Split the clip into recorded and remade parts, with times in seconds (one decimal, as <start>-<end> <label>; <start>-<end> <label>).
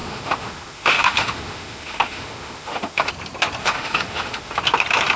0.0-3.1 remade; 3.1-3.6 recorded; 3.6-4.6 remade; 4.6-5.2 recorded